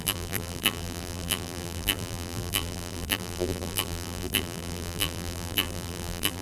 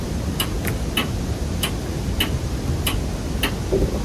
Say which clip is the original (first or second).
second